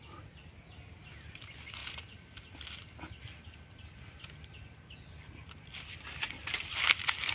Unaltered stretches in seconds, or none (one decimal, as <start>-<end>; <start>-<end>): 0.0-7.3

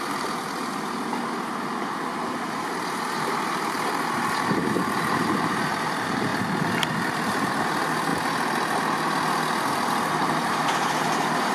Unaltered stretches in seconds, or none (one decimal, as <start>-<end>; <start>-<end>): 6.3-7.1; 8.1-10.1

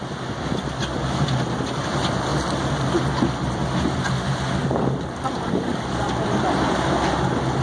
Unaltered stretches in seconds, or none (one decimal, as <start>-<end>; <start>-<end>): 0.0-7.6

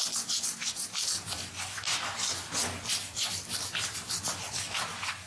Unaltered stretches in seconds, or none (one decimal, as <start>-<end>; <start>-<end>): 0.0-5.3

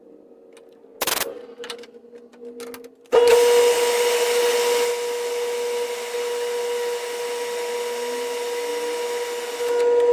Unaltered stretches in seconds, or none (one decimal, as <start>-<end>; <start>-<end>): 0.0-10.1

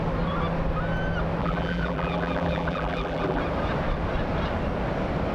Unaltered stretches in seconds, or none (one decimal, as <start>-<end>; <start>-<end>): 0.0-1.4; 3.4-5.3